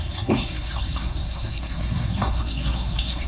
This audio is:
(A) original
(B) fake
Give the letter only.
B